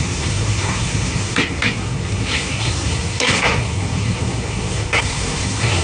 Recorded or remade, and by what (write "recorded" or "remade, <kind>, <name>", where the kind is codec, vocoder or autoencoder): remade, codec, SNAC